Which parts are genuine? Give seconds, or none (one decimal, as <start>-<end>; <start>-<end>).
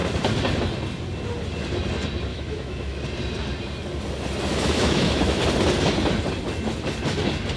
0.0-2.3; 3.0-4.5; 5.4-7.6